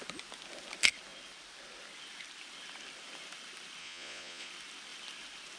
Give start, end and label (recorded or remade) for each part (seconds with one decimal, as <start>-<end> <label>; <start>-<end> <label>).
0.0-3.8 recorded; 3.8-4.5 remade; 4.5-5.6 recorded

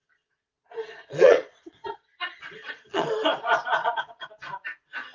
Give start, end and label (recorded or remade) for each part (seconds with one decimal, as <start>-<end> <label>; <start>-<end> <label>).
0.0-3.1 remade; 3.1-3.8 recorded; 3.8-4.3 remade; 4.3-5.1 recorded

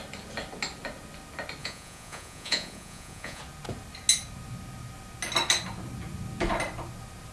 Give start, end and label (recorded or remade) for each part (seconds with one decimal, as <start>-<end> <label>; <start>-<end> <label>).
0.0-1.6 recorded; 1.6-3.4 remade; 3.4-7.3 recorded

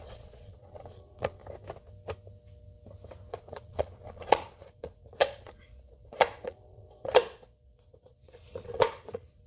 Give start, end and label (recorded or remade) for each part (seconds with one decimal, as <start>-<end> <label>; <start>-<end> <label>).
0.0-1.4 remade; 1.4-3.3 recorded; 3.3-9.5 remade

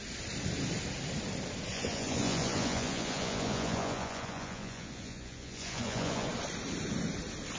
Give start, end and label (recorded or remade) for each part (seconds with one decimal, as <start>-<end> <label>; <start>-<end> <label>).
0.0-1.7 recorded; 1.7-6.3 remade; 6.3-7.6 recorded

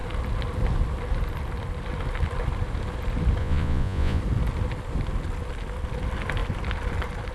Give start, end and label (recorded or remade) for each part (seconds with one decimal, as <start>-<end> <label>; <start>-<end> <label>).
0.0-3.4 recorded; 3.4-4.2 remade; 4.2-7.3 recorded